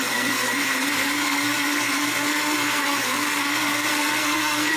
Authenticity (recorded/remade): remade